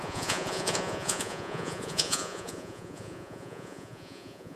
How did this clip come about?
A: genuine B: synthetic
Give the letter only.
B